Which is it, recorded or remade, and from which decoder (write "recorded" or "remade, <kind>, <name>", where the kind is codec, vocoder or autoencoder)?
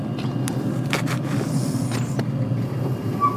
recorded